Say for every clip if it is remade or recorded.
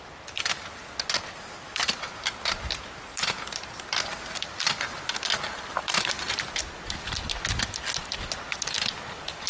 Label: recorded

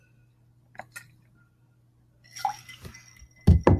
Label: recorded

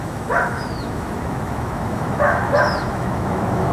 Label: remade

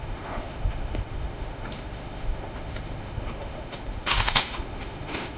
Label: remade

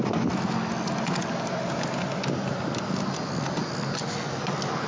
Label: recorded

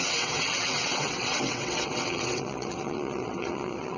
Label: remade